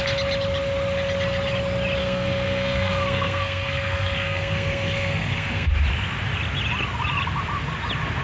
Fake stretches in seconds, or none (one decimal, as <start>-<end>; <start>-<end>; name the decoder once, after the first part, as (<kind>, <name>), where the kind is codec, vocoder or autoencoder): 2.0-5.7 (codec, SNAC)